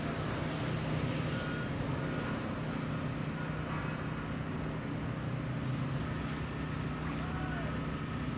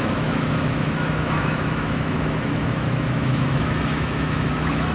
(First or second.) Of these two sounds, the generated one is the second